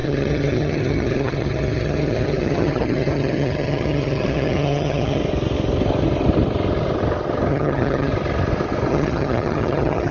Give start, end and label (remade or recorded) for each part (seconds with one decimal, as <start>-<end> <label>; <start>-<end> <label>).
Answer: 0.0-5.2 remade; 5.2-7.5 recorded; 7.5-8.1 remade; 8.1-8.9 recorded; 8.9-10.1 remade